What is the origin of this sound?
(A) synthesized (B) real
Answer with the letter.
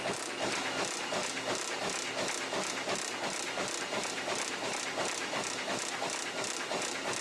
B